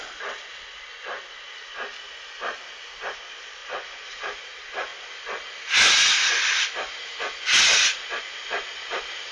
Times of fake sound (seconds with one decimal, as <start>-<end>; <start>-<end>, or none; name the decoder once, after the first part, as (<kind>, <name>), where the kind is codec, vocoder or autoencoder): 3.6-4.2 (vocoder, BigVGAN v2)